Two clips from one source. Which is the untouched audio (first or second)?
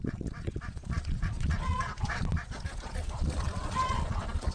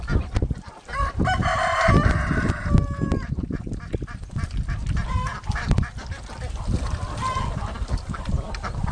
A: second